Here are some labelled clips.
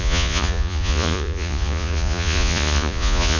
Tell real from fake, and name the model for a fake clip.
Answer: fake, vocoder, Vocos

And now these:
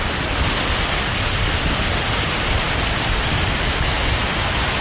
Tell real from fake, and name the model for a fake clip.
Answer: real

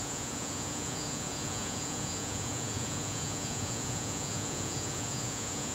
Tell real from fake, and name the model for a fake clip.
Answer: fake, vocoder, Vocos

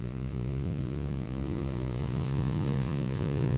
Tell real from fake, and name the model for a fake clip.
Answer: fake, vocoder, Vocos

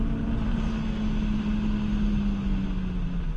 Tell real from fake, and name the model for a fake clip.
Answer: real